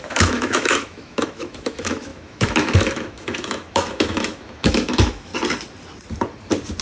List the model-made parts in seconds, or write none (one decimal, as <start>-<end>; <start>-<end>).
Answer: 0.0-5.3